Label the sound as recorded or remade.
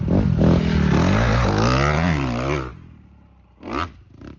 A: recorded